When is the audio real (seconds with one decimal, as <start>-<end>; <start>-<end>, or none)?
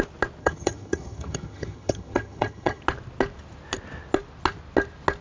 0.0-0.4; 2.8-5.2